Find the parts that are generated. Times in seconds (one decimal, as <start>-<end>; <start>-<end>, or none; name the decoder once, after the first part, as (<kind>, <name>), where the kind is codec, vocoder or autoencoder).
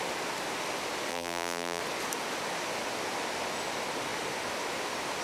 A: 1.1-1.8 (vocoder, BigVGAN v2)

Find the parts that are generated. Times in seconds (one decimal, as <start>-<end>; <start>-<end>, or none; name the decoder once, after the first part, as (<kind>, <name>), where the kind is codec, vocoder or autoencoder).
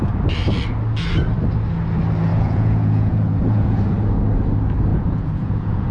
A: 2.3-3.8 (vocoder, Vocos); 4.9-5.9